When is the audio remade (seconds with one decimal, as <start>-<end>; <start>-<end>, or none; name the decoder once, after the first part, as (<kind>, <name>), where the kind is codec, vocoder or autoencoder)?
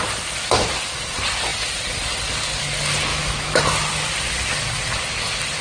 3.1-3.6 (autoencoder, DAC-VAE)